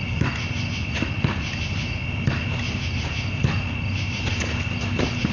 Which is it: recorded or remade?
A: recorded